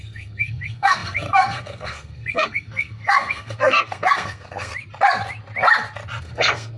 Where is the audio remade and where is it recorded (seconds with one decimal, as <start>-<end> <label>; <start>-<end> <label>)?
0.0-4.7 remade; 4.7-6.2 recorded; 6.2-6.8 remade

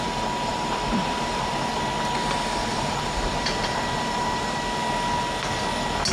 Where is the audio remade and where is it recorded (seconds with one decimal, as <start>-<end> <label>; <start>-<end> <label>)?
0.0-0.5 recorded; 0.5-1.7 remade; 1.7-2.7 recorded; 2.7-4.6 remade; 4.6-6.1 recorded

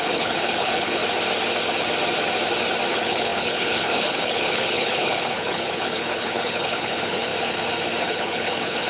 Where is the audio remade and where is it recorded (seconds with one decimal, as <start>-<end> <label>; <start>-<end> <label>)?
0.0-1.0 remade; 1.0-2.9 recorded; 2.9-7.3 remade; 7.3-8.0 recorded; 8.0-8.9 remade